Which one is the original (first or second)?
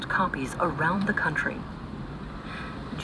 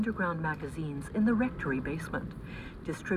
second